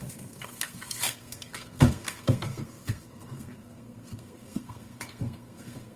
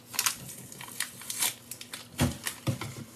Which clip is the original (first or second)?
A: second